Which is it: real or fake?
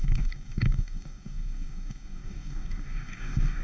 fake